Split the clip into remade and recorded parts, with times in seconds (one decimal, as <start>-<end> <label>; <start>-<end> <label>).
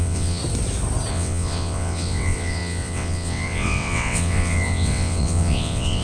0.0-0.4 remade; 0.4-1.1 recorded; 1.1-6.0 remade